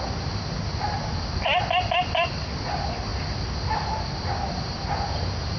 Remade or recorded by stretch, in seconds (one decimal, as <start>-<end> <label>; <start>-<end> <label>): 0.0-5.6 recorded